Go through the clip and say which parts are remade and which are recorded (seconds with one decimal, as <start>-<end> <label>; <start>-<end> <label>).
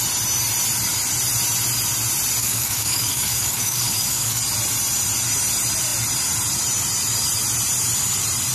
0.0-2.4 recorded; 2.4-4.4 remade; 4.4-8.5 recorded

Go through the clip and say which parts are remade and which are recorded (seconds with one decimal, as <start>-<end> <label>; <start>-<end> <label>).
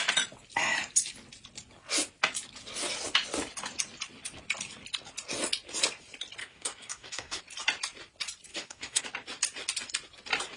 0.0-6.4 recorded; 6.4-7.4 remade; 7.4-8.5 recorded; 8.5-9.0 remade; 9.0-10.6 recorded